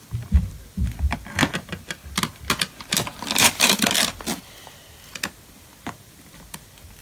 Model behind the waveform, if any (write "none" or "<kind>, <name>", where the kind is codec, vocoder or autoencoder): none